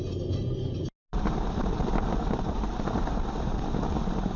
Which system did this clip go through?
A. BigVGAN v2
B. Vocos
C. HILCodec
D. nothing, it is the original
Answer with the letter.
D